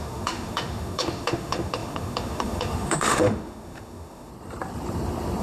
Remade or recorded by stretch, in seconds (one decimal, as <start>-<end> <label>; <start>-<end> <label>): 0.0-4.3 remade; 4.3-5.4 recorded